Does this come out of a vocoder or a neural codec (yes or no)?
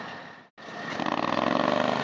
no